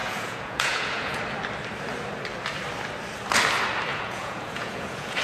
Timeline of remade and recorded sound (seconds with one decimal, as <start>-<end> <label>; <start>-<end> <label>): 0.0-1.2 remade; 1.2-3.9 recorded; 3.9-5.2 remade